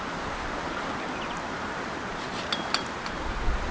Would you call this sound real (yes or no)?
yes